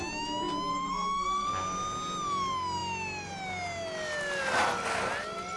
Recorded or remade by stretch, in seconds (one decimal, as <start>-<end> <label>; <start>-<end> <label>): 0.0-0.7 recorded; 0.7-1.5 remade; 1.5-5.6 recorded